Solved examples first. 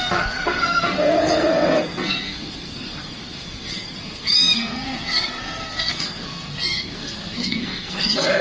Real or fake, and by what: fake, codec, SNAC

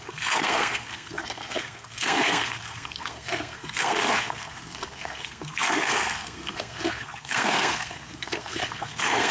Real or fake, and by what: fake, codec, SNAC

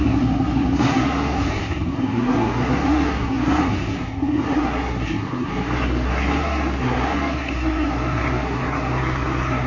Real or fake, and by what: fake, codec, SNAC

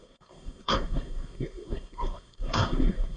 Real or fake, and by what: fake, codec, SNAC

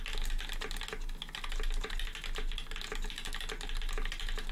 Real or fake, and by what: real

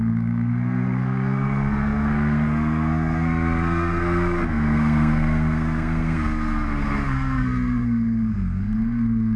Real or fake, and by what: fake, codec, SNAC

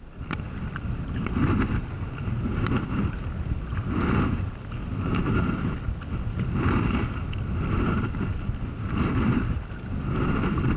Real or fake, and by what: real